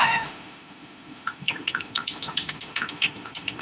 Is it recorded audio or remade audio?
remade